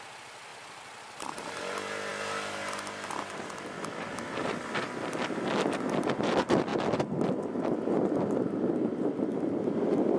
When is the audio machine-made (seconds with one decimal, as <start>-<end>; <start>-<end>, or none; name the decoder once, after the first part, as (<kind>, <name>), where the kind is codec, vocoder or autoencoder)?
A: none